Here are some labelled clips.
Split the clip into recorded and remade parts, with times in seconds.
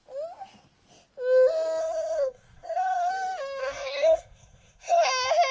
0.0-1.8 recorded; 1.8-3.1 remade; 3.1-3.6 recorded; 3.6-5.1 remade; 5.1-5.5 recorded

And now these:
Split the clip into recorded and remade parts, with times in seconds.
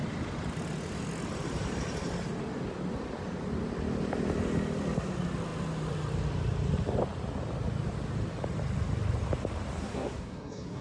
0.0-9.8 recorded; 9.8-10.8 remade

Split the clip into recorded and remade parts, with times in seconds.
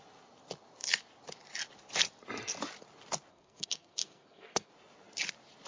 0.0-3.3 recorded; 3.3-4.7 remade; 4.7-5.7 recorded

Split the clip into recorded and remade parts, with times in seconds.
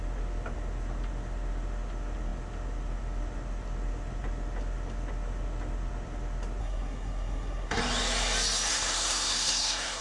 0.0-6.6 recorded; 6.6-7.8 remade; 7.8-8.7 recorded; 8.7-10.0 remade